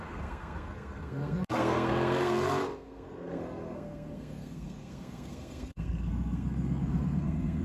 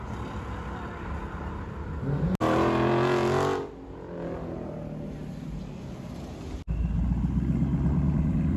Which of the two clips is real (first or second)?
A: second